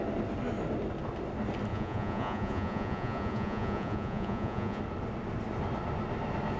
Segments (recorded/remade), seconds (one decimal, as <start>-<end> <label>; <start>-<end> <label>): 0.0-1.7 recorded; 1.7-4.8 remade; 4.8-6.6 recorded